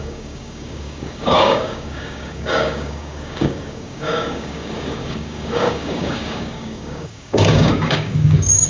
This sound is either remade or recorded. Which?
remade